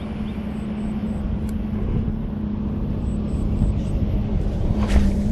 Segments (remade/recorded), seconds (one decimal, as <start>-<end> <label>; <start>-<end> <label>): 0.0-1.0 recorded; 1.0-2.3 remade; 2.3-4.3 recorded; 4.3-5.3 remade